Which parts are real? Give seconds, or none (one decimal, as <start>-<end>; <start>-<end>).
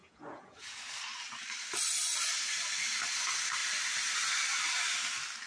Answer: 0.8-5.5